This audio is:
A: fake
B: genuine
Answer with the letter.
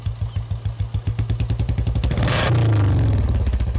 B